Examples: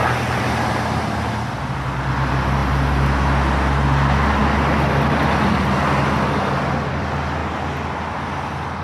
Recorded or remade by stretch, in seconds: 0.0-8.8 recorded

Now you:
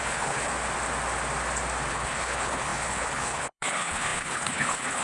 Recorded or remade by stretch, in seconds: 0.0-0.5 remade; 0.5-1.9 recorded; 1.9-5.0 remade

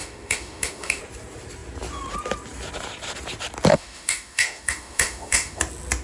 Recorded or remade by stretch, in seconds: 0.0-1.0 remade; 1.0-3.7 recorded; 3.7-5.6 remade; 5.6-6.0 recorded

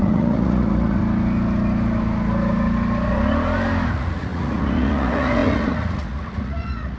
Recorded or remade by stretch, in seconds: 0.0-1.0 remade; 1.0-3.9 recorded; 3.9-7.0 remade

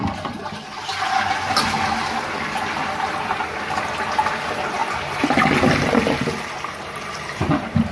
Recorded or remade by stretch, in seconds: 0.0-6.7 recorded; 6.7-7.9 remade

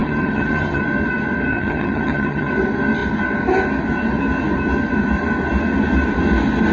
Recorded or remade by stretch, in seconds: 0.0-0.8 remade; 0.8-1.5 recorded; 1.5-2.5 remade; 2.5-6.7 recorded

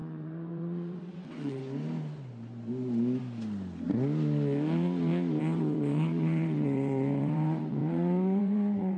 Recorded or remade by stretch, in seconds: 0.0-1.6 remade; 1.6-5.4 recorded; 5.4-9.0 remade

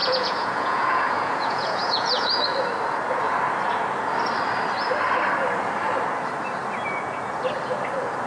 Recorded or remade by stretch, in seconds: 0.0-2.4 remade; 2.4-8.3 recorded